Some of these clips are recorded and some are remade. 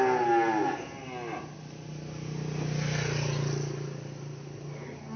recorded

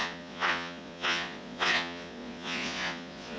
remade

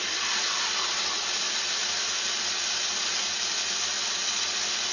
recorded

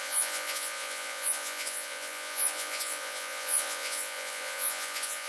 remade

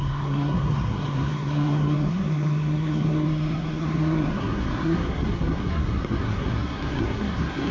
remade